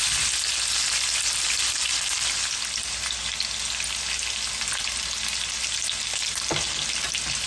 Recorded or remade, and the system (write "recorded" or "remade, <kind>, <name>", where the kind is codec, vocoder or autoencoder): recorded